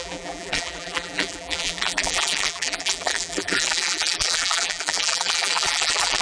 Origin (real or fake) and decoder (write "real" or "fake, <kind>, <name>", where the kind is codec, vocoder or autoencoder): fake, vocoder, BigVGAN v2